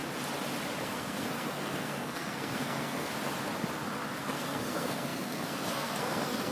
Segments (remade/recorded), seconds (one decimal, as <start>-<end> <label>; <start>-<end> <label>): 0.0-0.8 recorded; 0.8-3.1 remade; 3.1-4.2 recorded; 4.2-6.5 remade